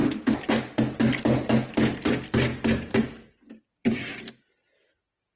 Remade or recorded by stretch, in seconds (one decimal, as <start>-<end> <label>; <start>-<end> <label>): 0.0-0.8 remade; 0.8-3.8 recorded; 3.8-4.3 remade; 4.3-5.4 recorded